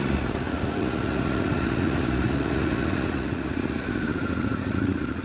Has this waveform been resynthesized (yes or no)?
yes